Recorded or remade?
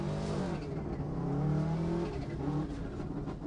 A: recorded